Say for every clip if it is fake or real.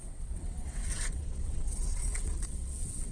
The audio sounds fake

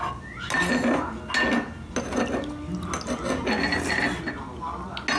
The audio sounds real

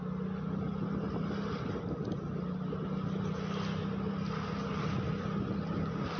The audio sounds real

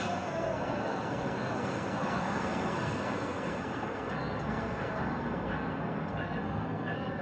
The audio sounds fake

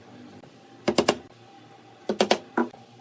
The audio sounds real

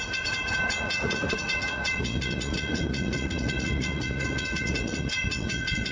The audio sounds fake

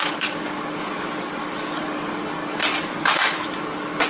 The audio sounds fake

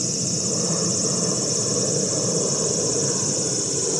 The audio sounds fake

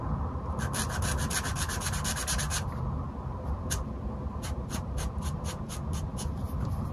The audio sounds real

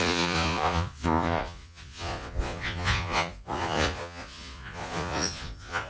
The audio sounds fake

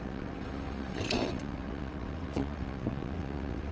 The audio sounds fake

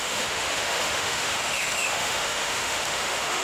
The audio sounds fake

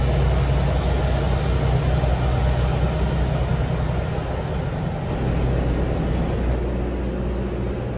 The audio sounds real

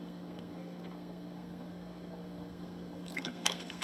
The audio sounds fake